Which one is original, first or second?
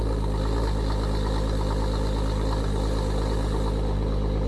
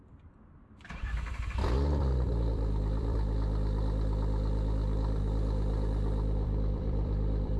first